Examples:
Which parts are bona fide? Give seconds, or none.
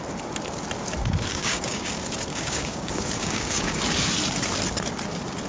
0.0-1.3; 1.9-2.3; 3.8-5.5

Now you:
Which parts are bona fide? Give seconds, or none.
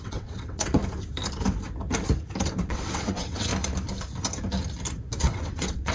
0.8-2.6; 3.5-5.2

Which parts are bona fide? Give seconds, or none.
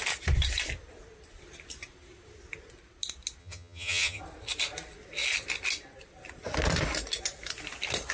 0.0-3.4; 4.2-8.1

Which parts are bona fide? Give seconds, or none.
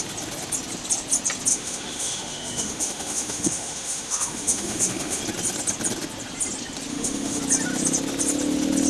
0.0-1.5; 5.2-6.9; 7.4-8.9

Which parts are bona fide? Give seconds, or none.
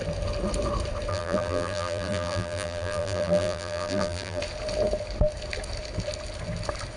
0.0-1.1; 4.4-7.0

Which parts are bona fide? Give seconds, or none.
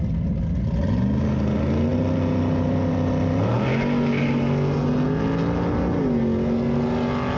0.0-7.4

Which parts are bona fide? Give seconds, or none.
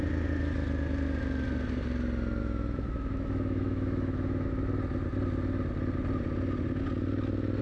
0.0-2.4; 4.5-7.6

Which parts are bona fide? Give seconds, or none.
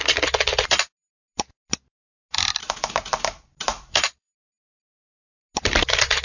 0.0-3.7; 4.3-6.2